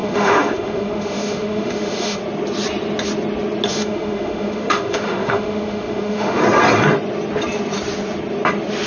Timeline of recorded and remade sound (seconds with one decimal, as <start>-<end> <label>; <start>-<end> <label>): 0.0-2.2 remade; 2.2-3.7 recorded; 3.7-6.4 remade; 6.4-8.9 recorded